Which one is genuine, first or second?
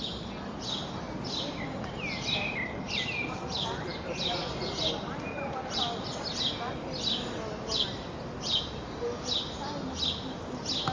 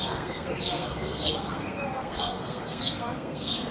first